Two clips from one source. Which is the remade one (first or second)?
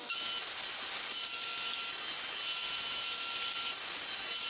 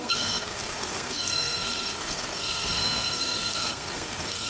second